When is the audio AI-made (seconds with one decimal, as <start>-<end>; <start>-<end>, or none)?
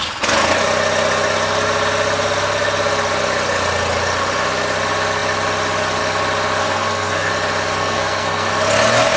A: 6.6-7.3; 7.8-8.5